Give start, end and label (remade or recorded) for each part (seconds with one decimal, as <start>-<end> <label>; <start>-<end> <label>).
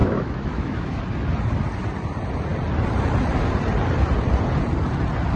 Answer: 0.0-1.0 remade; 1.0-5.4 recorded